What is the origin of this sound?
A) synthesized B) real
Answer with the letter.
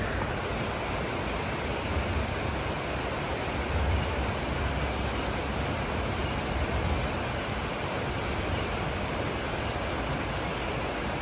B